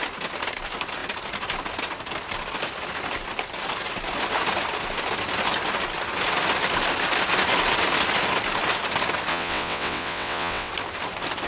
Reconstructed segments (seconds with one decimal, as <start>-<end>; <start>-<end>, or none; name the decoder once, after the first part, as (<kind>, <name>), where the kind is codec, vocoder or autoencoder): 9.3-10.7 (vocoder, WaveNeXt)